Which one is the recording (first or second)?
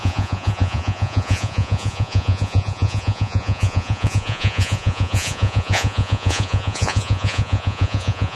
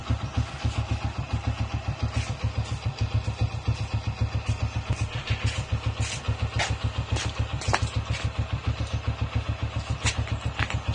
second